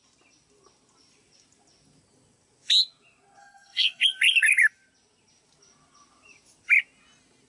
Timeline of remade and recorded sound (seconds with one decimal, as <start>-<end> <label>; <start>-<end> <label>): 0.0-3.4 recorded; 3.4-4.0 remade; 4.0-7.5 recorded